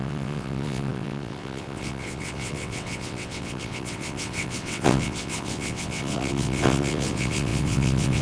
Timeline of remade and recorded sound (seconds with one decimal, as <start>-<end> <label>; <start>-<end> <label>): 0.0-8.2 remade